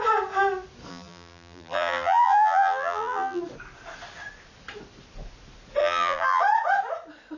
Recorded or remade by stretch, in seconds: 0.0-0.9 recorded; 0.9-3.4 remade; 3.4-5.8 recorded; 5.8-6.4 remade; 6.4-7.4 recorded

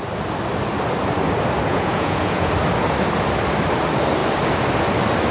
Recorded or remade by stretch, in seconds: 0.0-1.7 recorded; 1.7-2.5 remade; 2.5-5.3 recorded

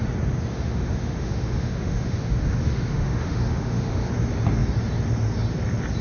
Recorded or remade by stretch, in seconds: 0.0-0.5 recorded; 0.5-4.1 remade; 4.1-6.0 recorded

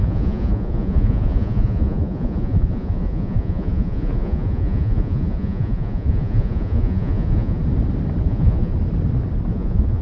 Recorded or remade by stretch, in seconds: 0.0-7.6 remade; 7.6-8.2 recorded; 8.2-8.7 remade; 8.7-9.5 recorded; 9.5-10.0 remade